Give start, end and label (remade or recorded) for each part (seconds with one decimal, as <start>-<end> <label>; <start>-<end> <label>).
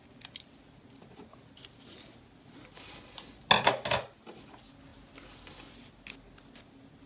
0.0-7.1 recorded